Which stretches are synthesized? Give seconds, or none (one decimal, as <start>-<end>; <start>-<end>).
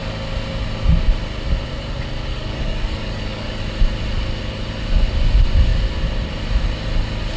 2.3-3.6